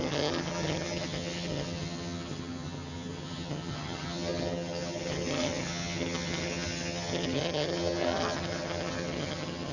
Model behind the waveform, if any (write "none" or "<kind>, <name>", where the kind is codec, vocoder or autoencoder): vocoder, HiFi-GAN